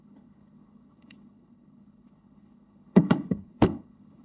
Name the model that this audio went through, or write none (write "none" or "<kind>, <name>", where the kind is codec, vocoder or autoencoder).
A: codec, HILCodec